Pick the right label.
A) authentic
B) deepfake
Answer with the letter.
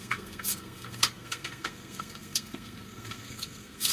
B